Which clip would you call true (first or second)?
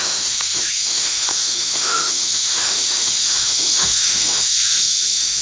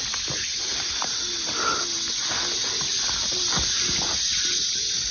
second